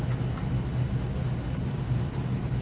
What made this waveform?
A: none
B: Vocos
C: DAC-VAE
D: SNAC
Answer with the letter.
A